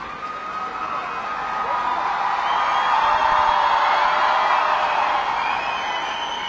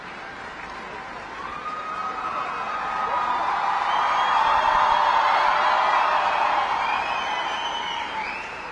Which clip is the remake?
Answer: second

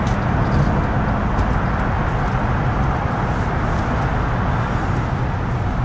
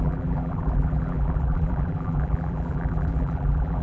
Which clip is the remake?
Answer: second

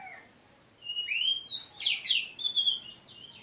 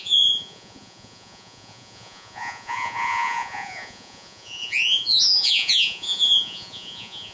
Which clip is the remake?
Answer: second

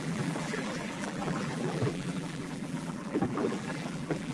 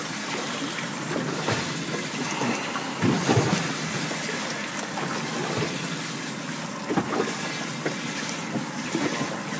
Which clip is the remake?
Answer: first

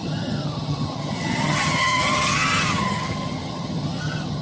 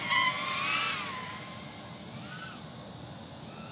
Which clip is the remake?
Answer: first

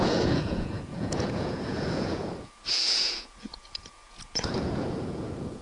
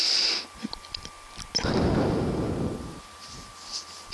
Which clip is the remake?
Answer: first